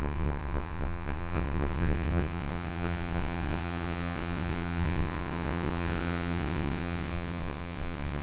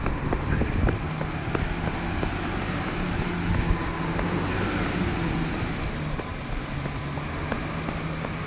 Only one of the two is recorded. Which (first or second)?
second